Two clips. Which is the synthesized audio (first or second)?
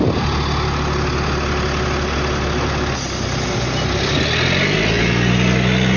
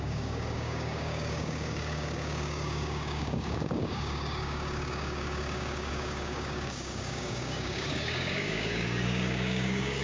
second